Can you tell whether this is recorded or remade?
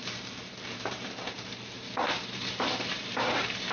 remade